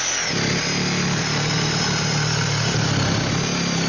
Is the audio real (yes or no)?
yes